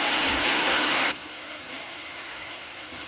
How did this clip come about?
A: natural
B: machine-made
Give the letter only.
B